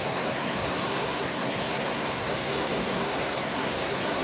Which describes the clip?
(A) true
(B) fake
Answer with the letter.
B